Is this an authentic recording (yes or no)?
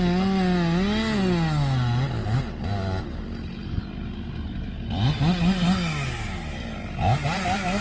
yes